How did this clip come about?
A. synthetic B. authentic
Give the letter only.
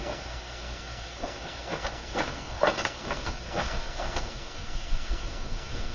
A